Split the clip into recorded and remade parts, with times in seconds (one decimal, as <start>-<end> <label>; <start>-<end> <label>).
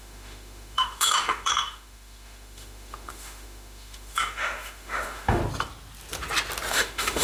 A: 0.0-5.4 remade; 5.4-6.7 recorded; 6.7-7.2 remade